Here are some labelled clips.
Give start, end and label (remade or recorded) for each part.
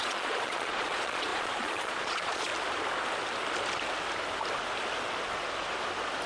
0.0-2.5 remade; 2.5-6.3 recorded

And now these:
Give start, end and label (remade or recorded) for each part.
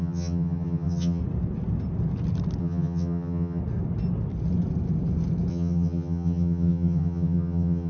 0.0-1.2 remade; 1.2-2.6 recorded; 2.6-3.6 remade; 3.6-5.5 recorded; 5.5-7.9 remade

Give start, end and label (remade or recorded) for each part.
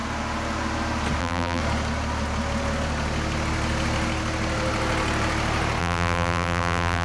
0.0-1.2 recorded; 1.2-1.6 remade; 1.6-5.8 recorded; 5.8-7.0 remade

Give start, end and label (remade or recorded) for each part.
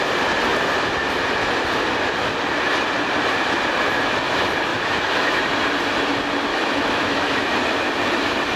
0.0-4.7 recorded; 4.7-5.4 remade; 5.4-6.5 recorded; 6.5-7.5 remade; 7.5-8.6 recorded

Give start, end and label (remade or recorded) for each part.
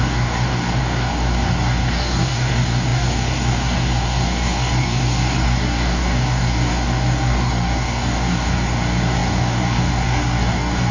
0.0-10.9 remade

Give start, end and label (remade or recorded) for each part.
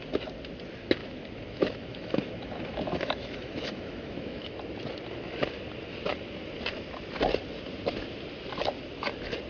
0.0-1.0 recorded; 1.0-4.6 remade; 4.6-9.5 recorded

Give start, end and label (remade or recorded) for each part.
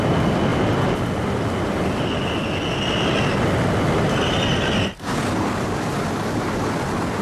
0.0-7.2 recorded